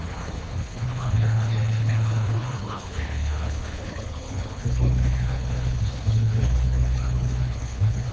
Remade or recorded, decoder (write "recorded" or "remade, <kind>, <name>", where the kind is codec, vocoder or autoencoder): remade, codec, HILCodec